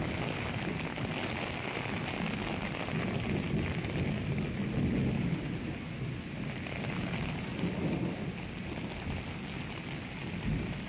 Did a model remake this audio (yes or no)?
no